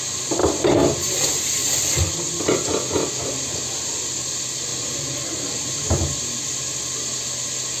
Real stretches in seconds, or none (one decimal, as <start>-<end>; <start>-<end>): 0.0-0.4; 2.7-4.7; 5.7-7.8